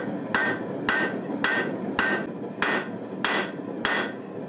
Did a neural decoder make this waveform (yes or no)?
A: no